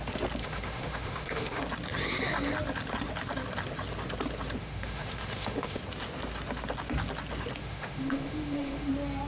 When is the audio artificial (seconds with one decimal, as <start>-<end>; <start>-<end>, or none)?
0.4-1.6; 4.6-5.8; 7.6-8.9